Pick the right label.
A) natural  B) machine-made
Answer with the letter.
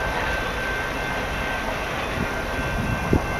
A